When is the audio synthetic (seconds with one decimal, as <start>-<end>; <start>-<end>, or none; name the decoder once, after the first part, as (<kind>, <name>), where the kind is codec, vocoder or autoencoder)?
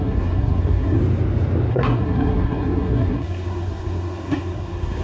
0.0-1.0 (codec, SNAC); 1.7-5.0